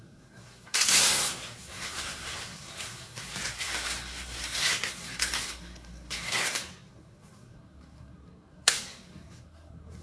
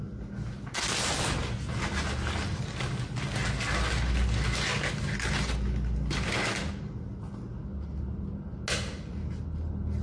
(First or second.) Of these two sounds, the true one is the second